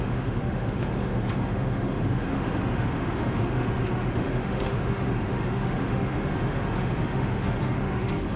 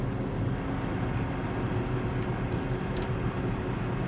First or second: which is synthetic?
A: first